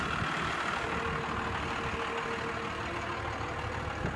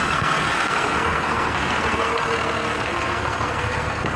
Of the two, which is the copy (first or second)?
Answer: second